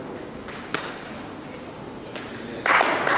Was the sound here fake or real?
real